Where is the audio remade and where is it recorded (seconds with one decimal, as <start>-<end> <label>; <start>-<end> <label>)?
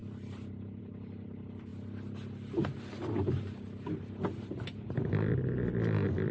0.0-0.8 remade; 0.8-6.3 recorded